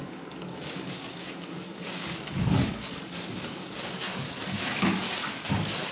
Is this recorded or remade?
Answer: remade